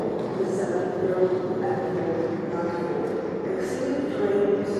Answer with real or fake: real